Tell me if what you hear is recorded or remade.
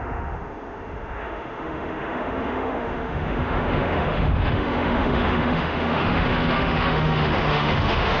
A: remade